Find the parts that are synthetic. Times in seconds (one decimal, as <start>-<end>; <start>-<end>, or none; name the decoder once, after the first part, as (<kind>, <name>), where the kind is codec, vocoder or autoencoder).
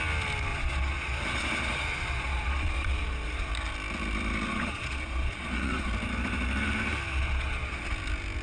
0.5-3.5 (vocoder, Vocos); 4.5-5.9; 7.2-7.9